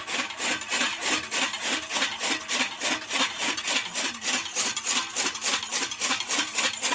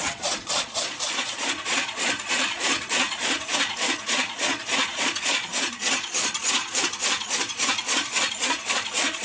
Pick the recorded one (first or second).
first